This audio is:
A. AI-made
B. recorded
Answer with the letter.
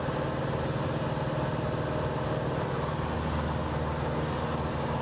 B